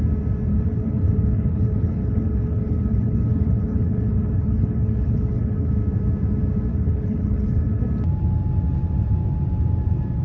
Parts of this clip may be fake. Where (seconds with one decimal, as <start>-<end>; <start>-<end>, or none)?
0.5-5.7; 6.7-7.8